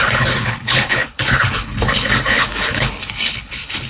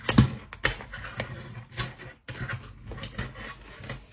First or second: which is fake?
first